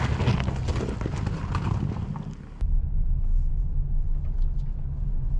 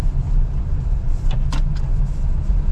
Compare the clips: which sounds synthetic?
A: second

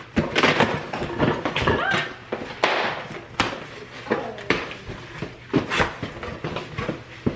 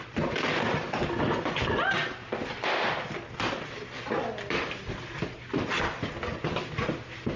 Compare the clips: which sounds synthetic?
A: second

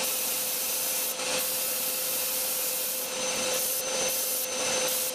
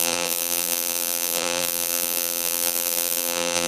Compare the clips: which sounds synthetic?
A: second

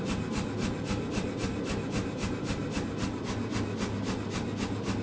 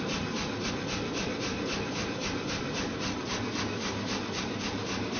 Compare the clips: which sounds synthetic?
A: second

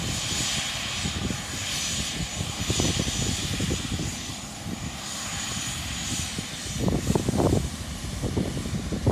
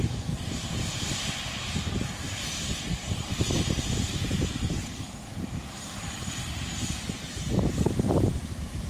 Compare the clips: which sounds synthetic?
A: second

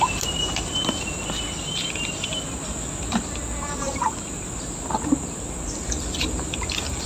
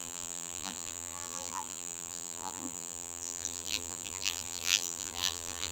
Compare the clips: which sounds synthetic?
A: second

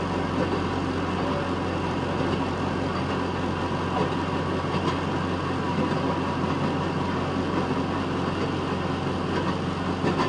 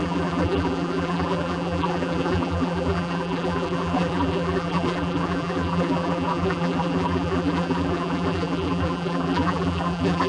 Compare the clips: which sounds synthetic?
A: second